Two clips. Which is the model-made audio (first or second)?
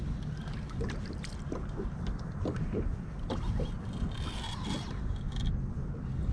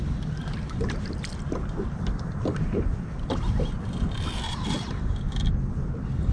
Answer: second